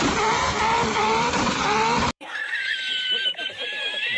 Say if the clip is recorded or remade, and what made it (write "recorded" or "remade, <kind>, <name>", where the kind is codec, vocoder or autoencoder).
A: remade, vocoder, BigVGAN v2